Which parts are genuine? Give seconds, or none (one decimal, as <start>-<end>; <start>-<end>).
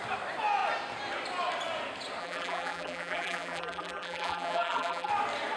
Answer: 0.0-2.2; 5.1-5.6